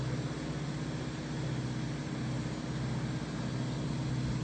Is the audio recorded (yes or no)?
yes